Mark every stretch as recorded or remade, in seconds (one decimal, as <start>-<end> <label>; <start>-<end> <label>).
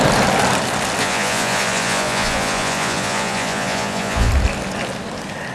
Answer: 0.0-1.0 recorded; 1.0-4.3 remade; 4.3-5.5 recorded